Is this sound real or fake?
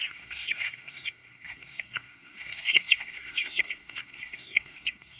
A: fake